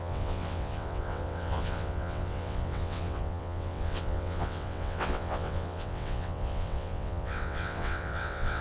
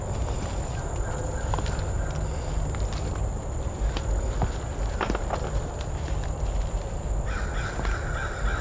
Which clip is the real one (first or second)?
second